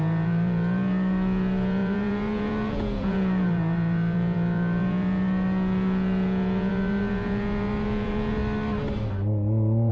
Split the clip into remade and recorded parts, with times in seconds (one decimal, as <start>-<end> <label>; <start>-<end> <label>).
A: 0.0-8.4 remade; 8.4-9.9 recorded